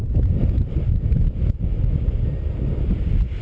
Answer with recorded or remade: recorded